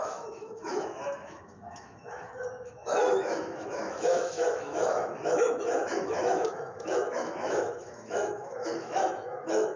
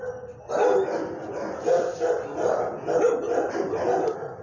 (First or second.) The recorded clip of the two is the second